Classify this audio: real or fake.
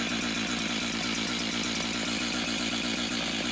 real